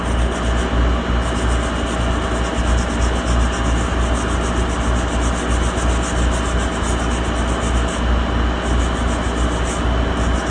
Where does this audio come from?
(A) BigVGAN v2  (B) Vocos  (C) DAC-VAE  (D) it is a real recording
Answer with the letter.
D